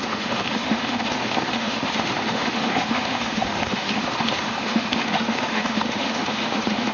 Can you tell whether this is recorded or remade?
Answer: remade